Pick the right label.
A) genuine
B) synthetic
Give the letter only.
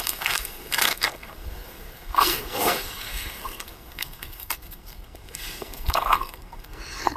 B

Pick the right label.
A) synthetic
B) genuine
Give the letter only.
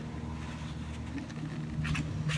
B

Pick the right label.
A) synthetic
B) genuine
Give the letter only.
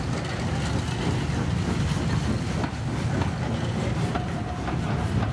B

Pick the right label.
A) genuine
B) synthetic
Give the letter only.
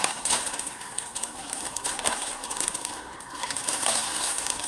B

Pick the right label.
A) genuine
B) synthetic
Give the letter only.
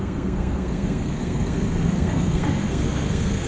B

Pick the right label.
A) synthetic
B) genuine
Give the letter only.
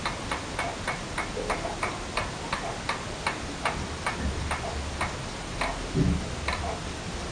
B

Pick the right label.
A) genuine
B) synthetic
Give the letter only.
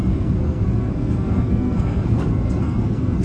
B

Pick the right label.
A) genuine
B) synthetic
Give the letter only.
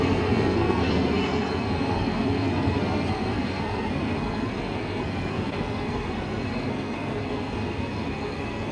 B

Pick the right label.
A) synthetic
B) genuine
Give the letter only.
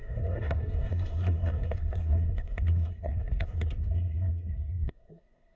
A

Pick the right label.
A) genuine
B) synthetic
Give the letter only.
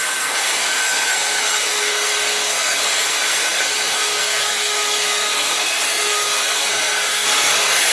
B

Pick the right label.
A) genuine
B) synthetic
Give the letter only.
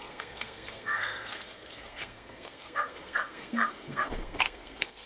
B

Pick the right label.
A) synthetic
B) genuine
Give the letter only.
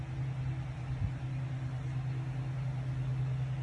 B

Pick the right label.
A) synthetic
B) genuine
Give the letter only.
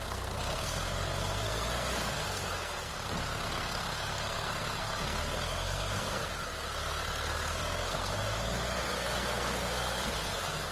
A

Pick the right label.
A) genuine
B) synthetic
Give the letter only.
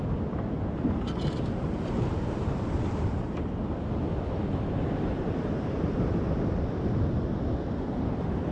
A